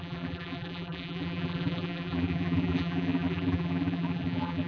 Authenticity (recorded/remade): remade